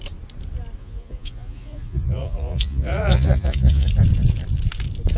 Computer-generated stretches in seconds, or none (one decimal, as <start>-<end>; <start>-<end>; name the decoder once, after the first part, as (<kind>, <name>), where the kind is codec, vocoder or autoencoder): 0.8-3.9 (vocoder, Vocos)